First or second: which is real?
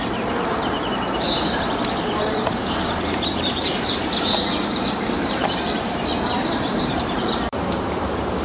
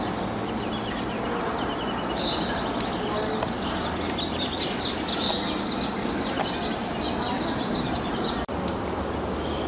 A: second